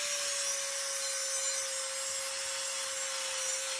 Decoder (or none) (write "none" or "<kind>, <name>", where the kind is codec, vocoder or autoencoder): none